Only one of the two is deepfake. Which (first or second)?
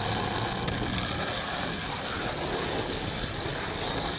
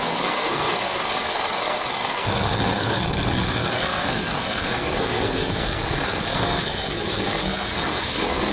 second